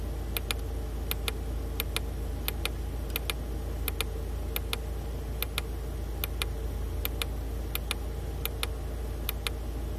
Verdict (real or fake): real